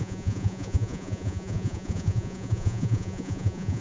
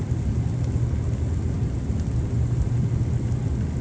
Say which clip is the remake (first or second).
first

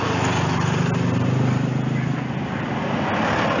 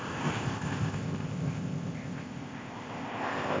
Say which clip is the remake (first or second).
second